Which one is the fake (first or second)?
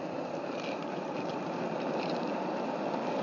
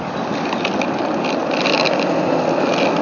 first